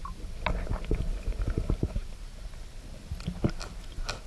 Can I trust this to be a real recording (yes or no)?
yes